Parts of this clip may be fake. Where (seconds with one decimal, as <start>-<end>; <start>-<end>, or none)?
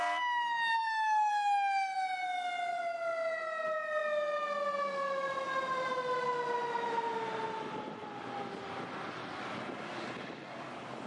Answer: 0.7-1.3